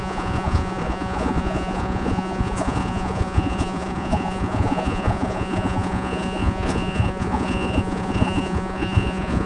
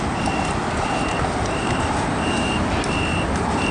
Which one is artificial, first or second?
first